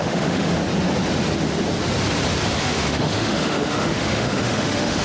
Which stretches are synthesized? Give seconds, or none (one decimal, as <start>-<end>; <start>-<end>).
0.0-0.6; 2.6-5.0